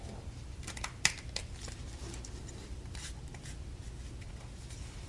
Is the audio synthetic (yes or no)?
no